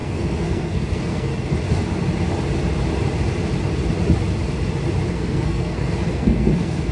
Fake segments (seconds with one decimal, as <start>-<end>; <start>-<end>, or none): 0.0-1.3; 5.1-6.9